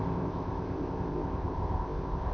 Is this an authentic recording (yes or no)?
no